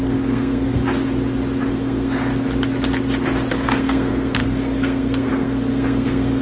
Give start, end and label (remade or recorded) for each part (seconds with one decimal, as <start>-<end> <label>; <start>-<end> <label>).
0.0-0.8 remade; 0.8-1.7 recorded; 1.7-2.3 remade; 2.3-3.5 recorded; 3.5-6.4 remade